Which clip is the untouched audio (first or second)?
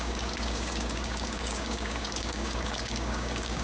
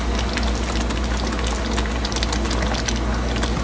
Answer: second